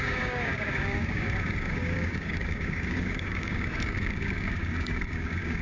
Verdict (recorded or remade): remade